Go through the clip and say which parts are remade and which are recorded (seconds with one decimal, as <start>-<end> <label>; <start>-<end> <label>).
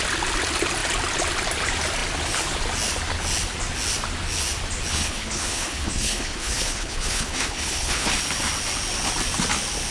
0.0-4.9 recorded; 4.9-8.1 remade; 8.1-9.9 recorded